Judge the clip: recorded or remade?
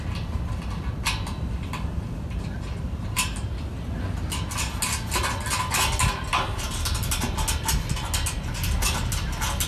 recorded